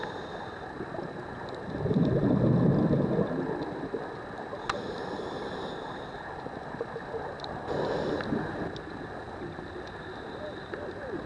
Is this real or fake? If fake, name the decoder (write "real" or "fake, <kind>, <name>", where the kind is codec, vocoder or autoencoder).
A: real